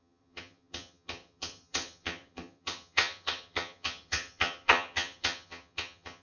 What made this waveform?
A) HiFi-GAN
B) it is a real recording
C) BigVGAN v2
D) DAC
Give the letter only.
A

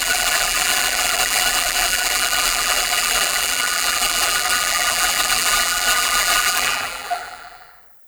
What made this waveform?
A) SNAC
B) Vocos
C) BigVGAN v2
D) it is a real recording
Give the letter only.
C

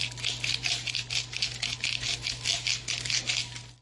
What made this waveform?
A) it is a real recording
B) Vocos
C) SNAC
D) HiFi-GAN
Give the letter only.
A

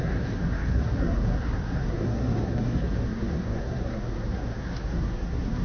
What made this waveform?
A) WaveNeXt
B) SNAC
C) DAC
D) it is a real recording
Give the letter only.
B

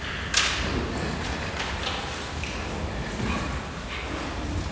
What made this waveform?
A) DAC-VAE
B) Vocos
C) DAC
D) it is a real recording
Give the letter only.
D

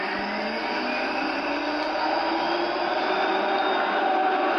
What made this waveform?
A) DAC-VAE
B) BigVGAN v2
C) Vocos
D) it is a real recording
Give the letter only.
D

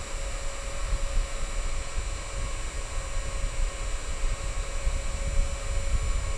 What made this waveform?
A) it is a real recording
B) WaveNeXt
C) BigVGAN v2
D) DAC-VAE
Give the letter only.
A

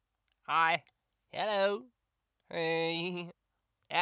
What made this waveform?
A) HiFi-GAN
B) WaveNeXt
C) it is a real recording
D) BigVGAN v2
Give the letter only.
C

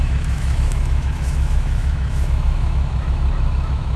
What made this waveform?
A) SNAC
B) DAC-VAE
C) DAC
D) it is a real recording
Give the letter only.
B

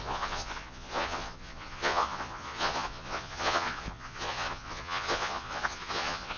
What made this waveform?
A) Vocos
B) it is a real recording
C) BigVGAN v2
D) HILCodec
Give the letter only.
A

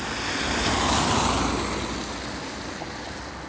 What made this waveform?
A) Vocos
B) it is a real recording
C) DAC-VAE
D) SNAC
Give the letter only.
B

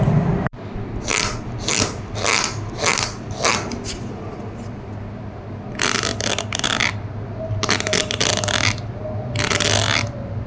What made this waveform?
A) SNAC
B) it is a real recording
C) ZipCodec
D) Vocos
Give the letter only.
B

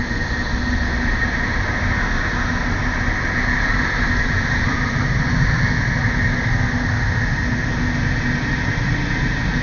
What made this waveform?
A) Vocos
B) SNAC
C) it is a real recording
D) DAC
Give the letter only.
C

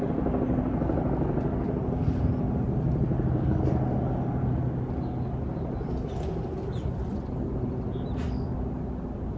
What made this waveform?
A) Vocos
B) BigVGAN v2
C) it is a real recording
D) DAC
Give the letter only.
C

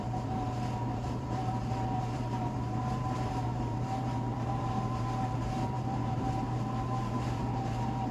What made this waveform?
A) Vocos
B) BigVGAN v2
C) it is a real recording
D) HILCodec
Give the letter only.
B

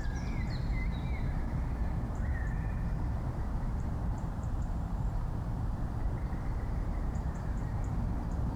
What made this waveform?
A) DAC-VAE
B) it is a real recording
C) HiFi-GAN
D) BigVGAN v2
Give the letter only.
D